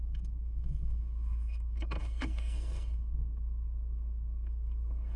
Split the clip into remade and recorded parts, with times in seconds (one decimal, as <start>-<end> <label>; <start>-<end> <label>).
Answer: 0.0-5.2 remade